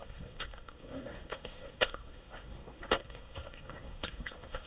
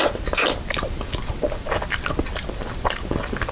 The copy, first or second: first